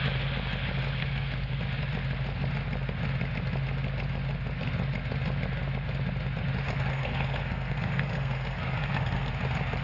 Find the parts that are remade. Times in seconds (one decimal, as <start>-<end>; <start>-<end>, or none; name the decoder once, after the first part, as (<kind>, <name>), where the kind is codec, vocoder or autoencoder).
1.0-1.6 (codec, SNAC); 6.9-9.3